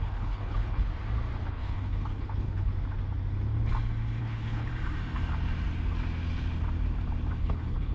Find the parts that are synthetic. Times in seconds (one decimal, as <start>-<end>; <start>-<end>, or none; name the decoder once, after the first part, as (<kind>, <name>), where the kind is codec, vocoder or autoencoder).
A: 0.0-0.9 (codec, HILCodec); 1.5-2.7; 4.2-4.7; 7.4-7.9